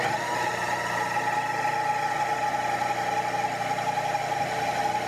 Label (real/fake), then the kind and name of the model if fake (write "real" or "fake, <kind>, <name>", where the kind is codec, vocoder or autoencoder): real